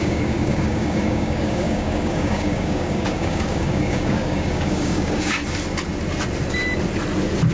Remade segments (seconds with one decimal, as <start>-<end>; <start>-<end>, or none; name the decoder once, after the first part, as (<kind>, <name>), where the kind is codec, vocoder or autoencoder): 0.0-5.4 (codec, DAC)